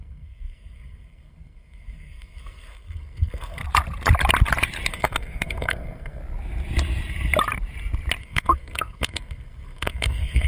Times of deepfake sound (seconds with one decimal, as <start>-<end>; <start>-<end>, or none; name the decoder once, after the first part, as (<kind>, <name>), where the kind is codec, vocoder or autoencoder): 0.0-3.6 (codec, SNAC); 4.9-6.2; 8.2-10.5

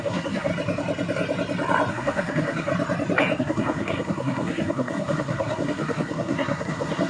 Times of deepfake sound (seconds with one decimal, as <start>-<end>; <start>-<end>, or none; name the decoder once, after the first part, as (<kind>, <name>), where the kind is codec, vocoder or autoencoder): 0.0-0.5 (codec, SNAC); 1.9-2.7; 3.4-7.1

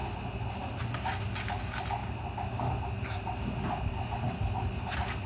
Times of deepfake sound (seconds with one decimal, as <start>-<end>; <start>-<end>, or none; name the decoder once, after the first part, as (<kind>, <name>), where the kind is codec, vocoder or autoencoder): none

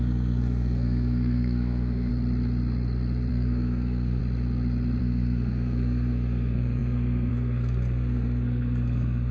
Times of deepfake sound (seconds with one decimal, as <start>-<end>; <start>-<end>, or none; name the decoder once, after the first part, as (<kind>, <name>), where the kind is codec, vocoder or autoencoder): 0.0-2.1 (codec, SNAC); 3.3-4.2; 5.0-9.3

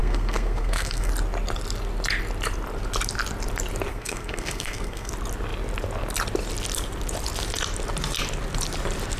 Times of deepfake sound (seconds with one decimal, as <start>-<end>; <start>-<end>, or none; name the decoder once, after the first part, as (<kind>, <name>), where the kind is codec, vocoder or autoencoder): 0.0-1.1 (codec, SNAC); 3.9-5.1

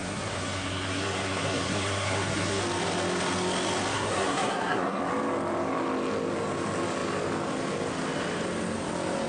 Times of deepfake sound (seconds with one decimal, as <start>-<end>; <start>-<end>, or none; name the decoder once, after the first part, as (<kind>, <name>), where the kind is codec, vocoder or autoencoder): 0.0-2.6 (codec, SNAC); 3.9-5.0

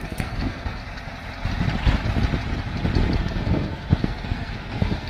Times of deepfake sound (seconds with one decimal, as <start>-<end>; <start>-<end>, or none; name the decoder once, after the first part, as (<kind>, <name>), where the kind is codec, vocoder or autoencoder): 0.0-0.8 (codec, SNAC); 3.2-5.1

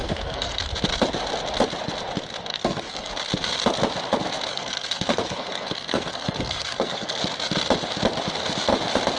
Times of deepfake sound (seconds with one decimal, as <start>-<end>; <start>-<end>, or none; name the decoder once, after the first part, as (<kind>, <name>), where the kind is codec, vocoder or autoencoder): 0.0-0.6 (codec, SNAC); 2.5-3.1; 4.5-7.2